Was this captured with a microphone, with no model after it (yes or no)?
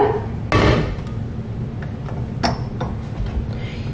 yes